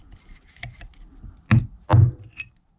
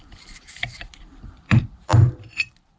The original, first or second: first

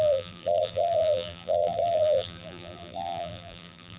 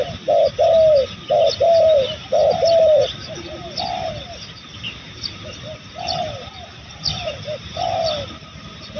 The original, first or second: second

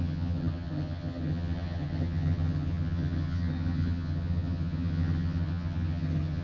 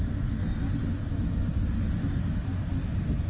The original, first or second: second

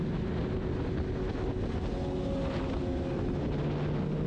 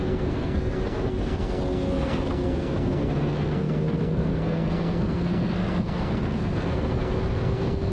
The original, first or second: first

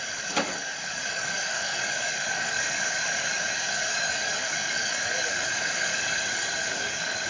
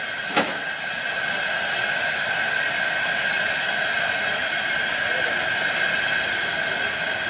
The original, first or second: second